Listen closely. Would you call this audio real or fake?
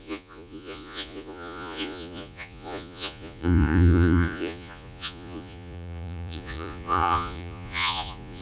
fake